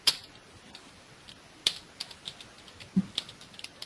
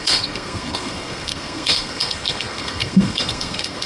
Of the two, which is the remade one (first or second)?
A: second